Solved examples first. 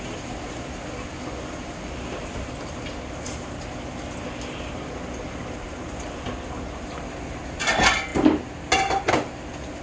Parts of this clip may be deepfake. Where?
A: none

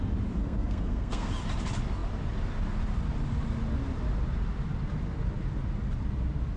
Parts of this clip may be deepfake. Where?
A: 0.4-1.3

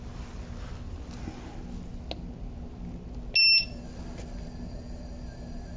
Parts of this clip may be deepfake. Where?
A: none

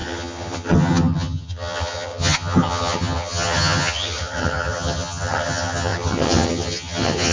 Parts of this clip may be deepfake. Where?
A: 0.0-7.3

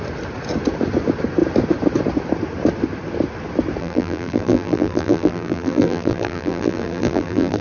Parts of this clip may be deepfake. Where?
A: 3.8-7.6

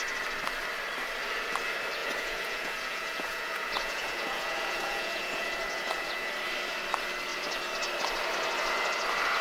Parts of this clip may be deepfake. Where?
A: 2.0-6.3

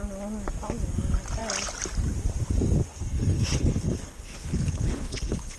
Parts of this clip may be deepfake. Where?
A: 2.9-5.6

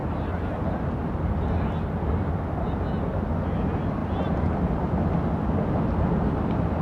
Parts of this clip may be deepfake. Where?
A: none